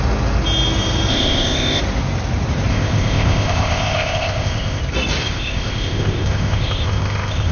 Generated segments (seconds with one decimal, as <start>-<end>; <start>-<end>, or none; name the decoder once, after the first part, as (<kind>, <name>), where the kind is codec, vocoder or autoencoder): 1.1-1.8 (codec, ZipCodec); 2.7-4.8; 5.2-7.5